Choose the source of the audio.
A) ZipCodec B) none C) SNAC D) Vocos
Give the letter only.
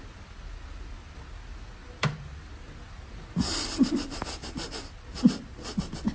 B